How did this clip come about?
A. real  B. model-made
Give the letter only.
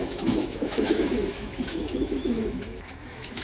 B